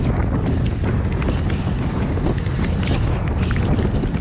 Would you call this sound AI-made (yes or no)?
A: no